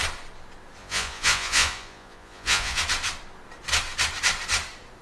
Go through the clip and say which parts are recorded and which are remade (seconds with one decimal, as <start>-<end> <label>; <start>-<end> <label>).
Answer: 0.0-0.8 recorded; 0.8-2.8 remade; 2.8-5.0 recorded